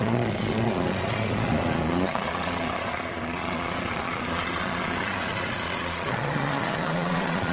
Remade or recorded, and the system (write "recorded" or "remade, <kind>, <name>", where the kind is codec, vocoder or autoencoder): remade, vocoder, Vocos